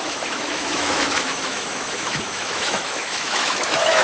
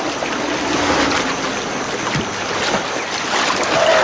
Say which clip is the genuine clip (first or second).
second